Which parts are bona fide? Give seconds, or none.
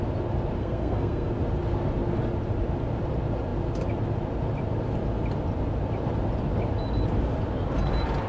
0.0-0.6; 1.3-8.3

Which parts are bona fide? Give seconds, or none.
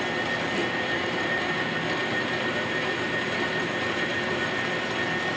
0.0-0.6; 1.6-2.0; 4.4-5.4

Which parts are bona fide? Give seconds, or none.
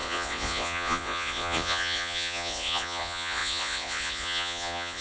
none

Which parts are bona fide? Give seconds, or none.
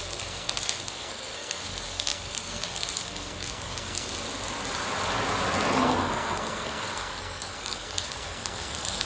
4.1-5.7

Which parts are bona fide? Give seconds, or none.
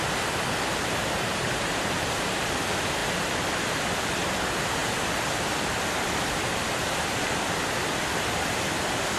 0.0-0.7; 2.3-9.2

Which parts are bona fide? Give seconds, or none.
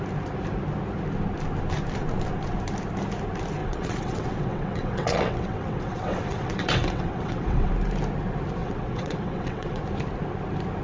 0.0-3.6; 7.7-8.6; 9.8-10.8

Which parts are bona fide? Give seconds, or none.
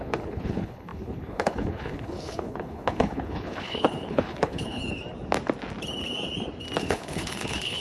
4.8-6.8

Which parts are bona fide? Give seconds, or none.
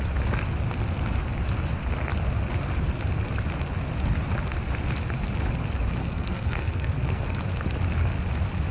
0.0-6.0; 7.4-8.7